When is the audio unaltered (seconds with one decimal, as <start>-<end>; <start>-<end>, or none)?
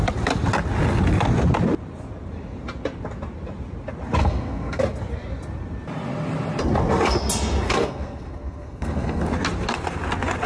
0.0-4.2; 4.8-7.8; 9.2-10.5